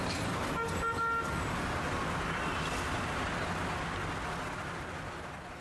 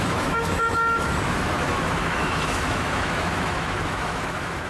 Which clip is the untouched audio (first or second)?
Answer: first